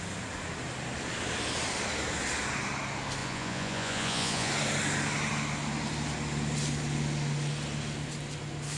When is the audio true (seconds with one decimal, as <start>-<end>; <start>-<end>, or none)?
0.0-3.2; 4.5-8.8